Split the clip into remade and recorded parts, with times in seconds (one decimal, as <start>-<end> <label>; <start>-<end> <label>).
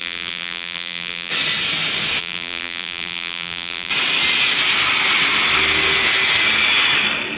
0.0-1.3 remade; 1.3-2.2 recorded; 2.2-3.9 remade; 3.9-7.4 recorded